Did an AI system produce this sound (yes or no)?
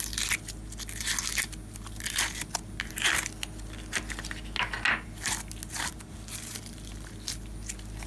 no